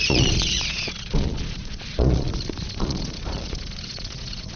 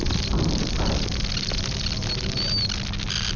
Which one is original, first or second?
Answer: second